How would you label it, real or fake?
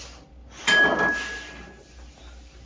real